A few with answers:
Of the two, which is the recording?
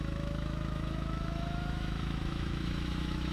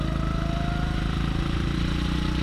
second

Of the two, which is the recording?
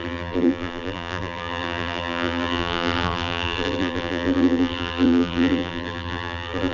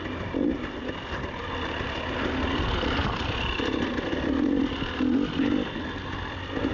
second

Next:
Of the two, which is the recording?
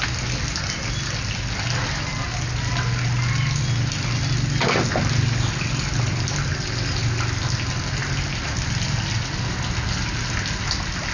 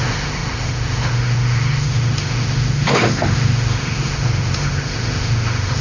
first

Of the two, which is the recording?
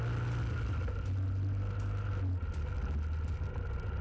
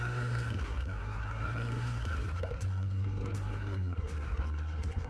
first